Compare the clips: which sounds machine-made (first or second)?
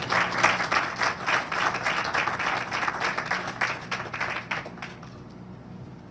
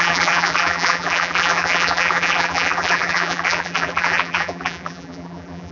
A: second